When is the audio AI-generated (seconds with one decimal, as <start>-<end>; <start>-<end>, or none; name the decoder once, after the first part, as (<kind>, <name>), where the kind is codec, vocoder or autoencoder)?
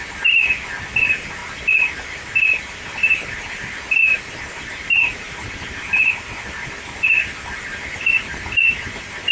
none